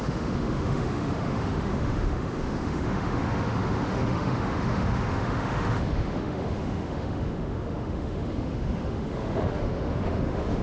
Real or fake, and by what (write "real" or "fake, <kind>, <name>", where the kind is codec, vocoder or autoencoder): fake, autoencoder, DAC-VAE